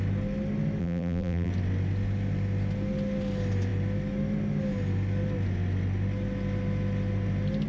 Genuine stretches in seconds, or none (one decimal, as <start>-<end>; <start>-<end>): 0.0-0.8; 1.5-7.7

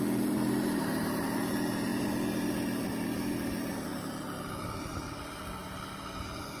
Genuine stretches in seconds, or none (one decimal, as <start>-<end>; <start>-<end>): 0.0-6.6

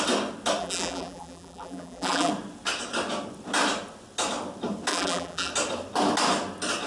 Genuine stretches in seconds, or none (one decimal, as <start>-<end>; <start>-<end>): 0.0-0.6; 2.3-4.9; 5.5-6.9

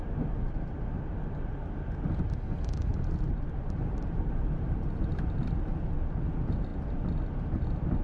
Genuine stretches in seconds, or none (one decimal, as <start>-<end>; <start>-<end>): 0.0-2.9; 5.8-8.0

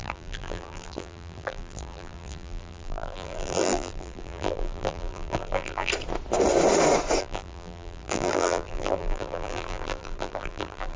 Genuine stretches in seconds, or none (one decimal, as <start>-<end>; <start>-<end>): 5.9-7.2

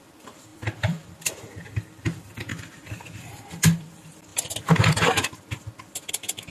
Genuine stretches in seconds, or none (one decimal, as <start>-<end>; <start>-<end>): 2.5-3.2; 4.3-6.1

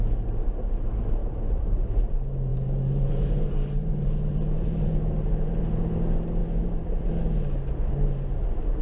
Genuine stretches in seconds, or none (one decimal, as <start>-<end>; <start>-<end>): 0.0-1.2; 1.9-2.5; 5.8-6.4; 7.1-8.8

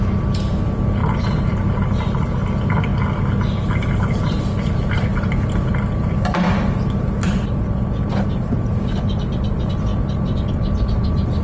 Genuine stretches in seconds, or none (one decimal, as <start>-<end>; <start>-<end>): 0.0-1.0; 1.5-5.1; 5.7-11.4